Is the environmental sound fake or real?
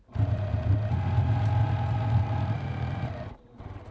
real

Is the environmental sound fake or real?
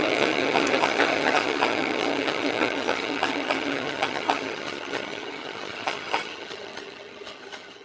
fake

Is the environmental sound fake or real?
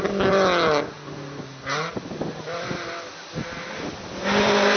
real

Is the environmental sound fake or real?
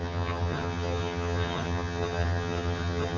fake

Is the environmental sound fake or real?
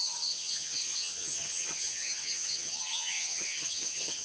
fake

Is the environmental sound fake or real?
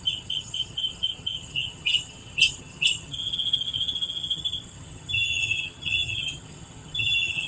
fake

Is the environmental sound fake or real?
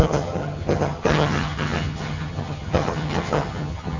fake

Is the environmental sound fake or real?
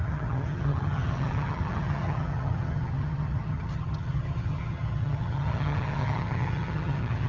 fake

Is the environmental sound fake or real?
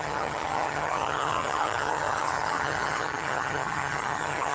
fake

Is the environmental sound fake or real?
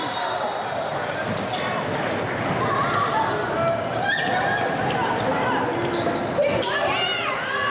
real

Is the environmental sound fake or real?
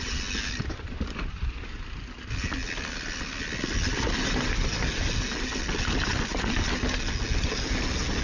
real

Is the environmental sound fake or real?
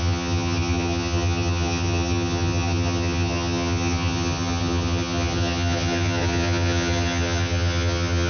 fake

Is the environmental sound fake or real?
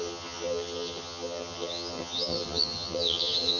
fake